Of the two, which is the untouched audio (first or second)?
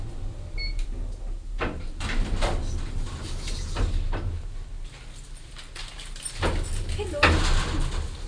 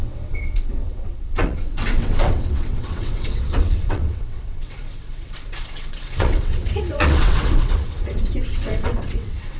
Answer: first